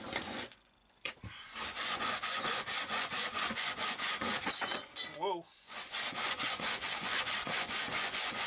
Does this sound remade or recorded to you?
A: remade